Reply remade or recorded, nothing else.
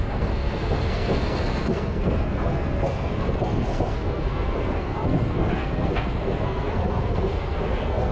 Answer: remade